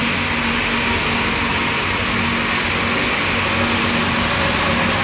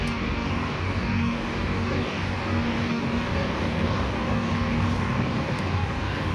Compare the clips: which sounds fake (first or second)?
second